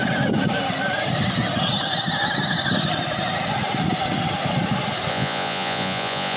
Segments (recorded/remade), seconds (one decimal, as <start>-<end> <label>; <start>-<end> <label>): 0.0-5.1 recorded; 5.1-6.4 remade